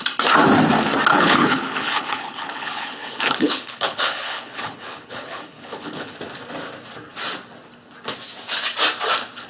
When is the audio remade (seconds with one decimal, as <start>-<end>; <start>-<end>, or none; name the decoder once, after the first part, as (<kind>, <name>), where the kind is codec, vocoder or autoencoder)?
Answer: 1.1-6.2 (codec, HILCodec)